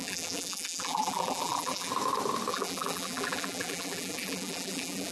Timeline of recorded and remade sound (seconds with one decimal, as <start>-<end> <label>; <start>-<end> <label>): 0.0-1.9 remade; 1.9-2.5 recorded; 2.5-5.1 remade